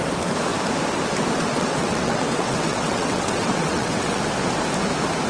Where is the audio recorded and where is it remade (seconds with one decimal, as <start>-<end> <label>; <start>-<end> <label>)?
0.0-1.5 recorded; 1.5-4.2 remade; 4.2-5.3 recorded